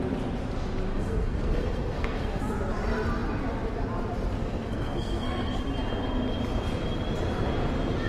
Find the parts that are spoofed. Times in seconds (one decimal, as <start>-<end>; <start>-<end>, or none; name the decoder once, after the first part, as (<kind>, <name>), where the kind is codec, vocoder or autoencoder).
0.9-2.4 (codec, SNAC); 4.4-5.6